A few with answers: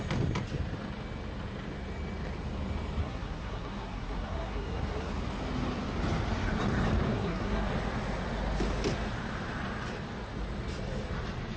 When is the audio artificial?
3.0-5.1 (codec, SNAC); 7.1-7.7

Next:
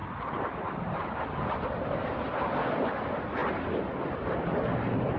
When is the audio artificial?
none

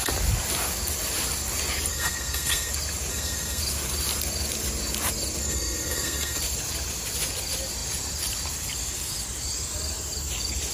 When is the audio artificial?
1.9-2.7 (codec, SNAC); 3.1-3.6; 5.4-6.4